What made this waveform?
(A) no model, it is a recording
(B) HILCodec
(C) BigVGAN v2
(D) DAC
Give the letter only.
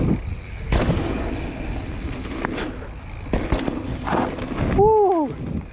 A